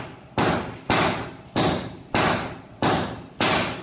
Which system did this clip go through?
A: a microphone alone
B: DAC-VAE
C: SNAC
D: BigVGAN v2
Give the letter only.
A